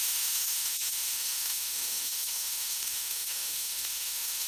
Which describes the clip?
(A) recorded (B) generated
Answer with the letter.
B